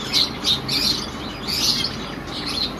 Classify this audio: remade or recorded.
recorded